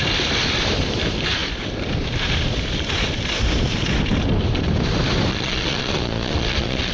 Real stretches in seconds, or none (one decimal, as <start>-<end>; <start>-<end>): 0.0-5.3